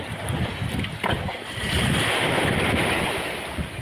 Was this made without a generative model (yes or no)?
yes